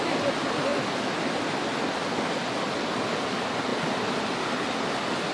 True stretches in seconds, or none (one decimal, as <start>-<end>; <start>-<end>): 0.0-5.3